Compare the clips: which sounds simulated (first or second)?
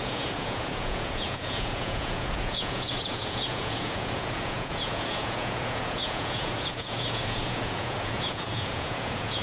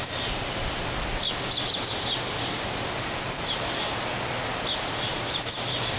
first